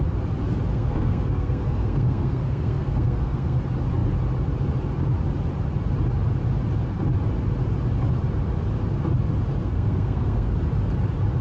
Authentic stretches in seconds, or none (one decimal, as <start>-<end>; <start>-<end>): 0.0-0.7; 3.6-9.6; 10.5-11.4